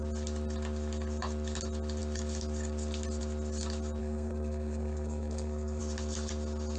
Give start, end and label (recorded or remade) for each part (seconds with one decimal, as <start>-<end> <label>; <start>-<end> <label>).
0.0-4.0 recorded; 4.0-5.8 remade; 5.8-6.8 recorded